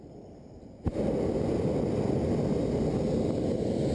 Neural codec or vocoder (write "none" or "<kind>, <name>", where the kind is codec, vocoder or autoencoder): none